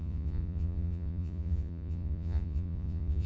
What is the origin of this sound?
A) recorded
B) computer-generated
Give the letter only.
B